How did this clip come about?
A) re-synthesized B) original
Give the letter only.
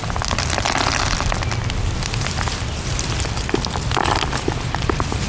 B